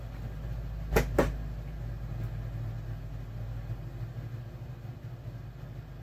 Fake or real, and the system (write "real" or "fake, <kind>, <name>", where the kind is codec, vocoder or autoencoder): real